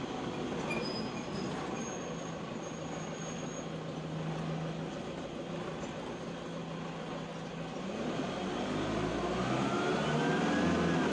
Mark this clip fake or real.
real